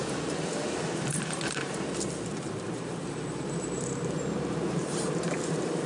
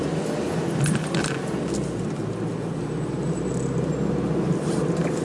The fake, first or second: first